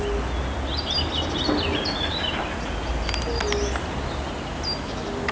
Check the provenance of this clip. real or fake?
real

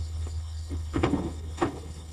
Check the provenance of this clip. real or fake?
fake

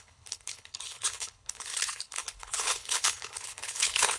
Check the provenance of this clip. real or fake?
fake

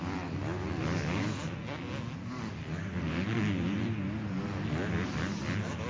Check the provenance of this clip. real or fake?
real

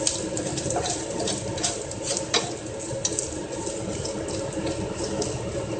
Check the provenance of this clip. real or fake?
real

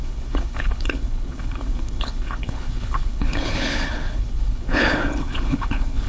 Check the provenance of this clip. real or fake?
fake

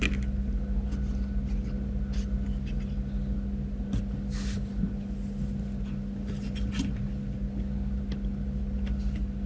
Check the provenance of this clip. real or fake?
real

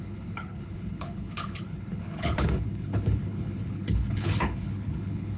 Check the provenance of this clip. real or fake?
fake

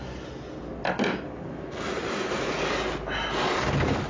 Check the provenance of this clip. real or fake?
real